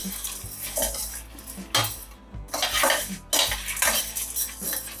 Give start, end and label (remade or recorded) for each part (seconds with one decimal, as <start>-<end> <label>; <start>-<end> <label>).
0.0-5.0 recorded